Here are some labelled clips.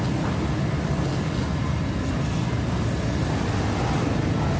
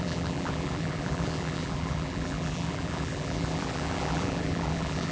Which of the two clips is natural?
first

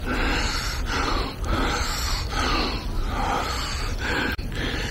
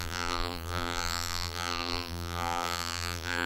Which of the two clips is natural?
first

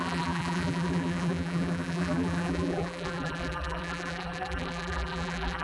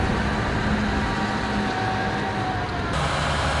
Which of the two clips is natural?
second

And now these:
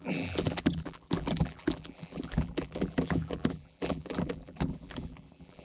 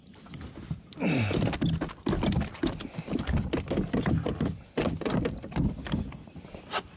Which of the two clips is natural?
second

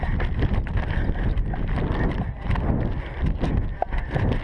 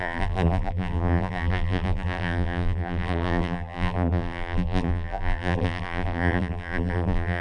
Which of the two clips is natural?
first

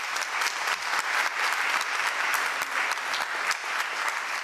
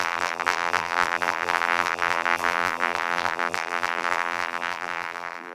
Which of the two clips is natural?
first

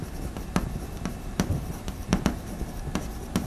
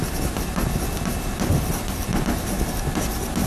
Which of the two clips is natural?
second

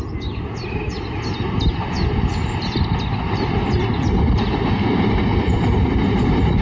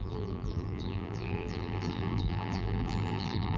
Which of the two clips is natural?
first